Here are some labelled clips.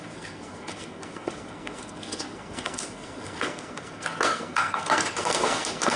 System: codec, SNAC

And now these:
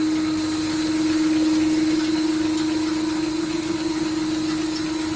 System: none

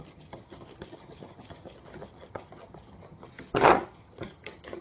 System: vocoder, HiFi-GAN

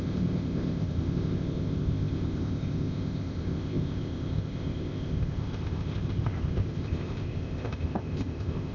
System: codec, ZipCodec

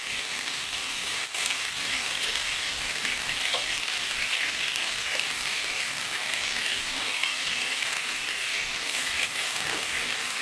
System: codec, DAC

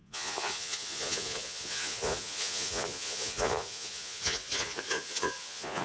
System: vocoder, Vocos